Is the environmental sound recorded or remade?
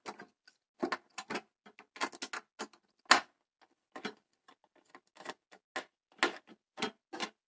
recorded